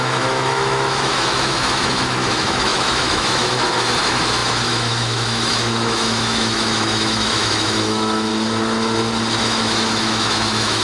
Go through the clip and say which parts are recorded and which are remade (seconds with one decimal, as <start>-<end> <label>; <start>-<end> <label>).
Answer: 0.0-8.3 remade; 8.3-9.4 recorded; 9.4-10.8 remade